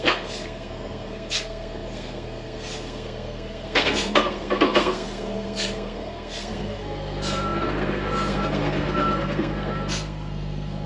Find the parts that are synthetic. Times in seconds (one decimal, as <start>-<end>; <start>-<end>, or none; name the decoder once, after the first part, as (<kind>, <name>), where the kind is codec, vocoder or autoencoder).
0.0-10.9 (codec, SNAC)